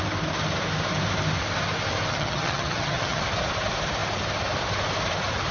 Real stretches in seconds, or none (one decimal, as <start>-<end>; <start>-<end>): 0.0-2.1; 3.2-5.5